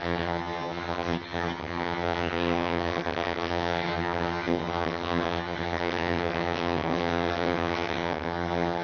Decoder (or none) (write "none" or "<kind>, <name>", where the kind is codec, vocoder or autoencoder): vocoder, HiFi-GAN